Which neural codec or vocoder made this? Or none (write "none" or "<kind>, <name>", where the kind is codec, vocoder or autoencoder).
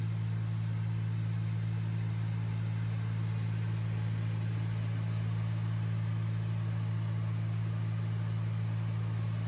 none